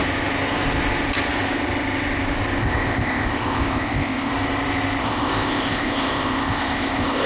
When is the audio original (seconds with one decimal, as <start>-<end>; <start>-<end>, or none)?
0.0-2.6; 4.3-5.0